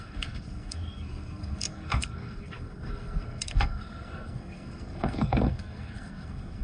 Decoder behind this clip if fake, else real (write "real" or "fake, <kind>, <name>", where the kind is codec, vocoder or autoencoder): fake, codec, SNAC